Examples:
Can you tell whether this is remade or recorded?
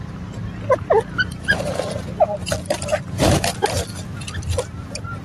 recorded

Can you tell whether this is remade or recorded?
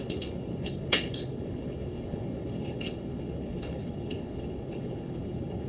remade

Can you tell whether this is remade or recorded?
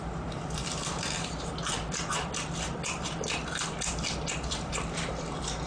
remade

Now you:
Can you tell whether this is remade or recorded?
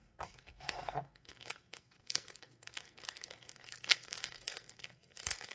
remade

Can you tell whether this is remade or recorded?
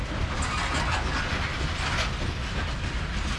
recorded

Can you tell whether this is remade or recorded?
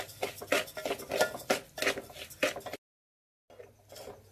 recorded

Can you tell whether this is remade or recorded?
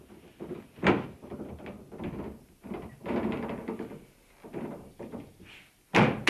recorded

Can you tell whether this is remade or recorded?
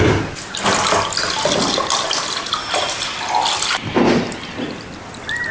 recorded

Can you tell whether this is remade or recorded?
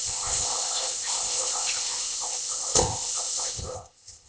remade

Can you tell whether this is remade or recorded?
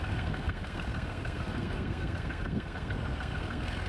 remade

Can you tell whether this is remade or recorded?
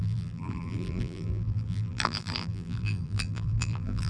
remade